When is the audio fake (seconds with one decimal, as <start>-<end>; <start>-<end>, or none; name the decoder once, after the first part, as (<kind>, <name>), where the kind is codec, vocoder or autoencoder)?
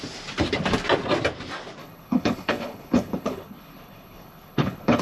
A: 1.8-5.0 (codec, HILCodec)